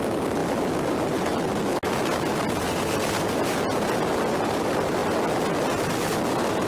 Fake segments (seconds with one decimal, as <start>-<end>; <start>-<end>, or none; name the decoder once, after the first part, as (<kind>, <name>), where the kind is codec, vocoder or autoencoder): none